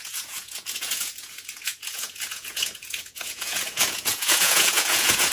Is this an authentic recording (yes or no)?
no